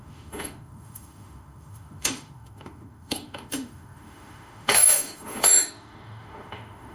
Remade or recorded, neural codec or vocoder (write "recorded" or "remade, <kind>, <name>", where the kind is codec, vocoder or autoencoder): remade, autoencoder, DAC-VAE